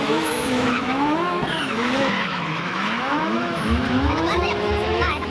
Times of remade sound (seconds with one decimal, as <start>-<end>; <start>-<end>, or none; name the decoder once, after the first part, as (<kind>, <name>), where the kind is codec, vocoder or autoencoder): 0.0-5.3 (autoencoder, DAC-VAE)